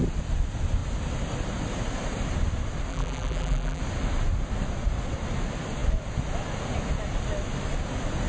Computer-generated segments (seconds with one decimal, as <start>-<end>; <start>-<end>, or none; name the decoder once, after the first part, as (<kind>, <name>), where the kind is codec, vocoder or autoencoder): 2.9-3.8 (vocoder, BigVGAN v2)